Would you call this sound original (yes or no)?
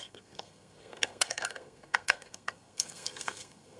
no